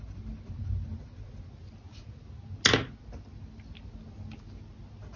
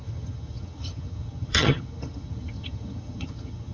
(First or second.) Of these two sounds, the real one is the first